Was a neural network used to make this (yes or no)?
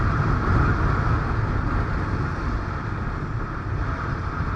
no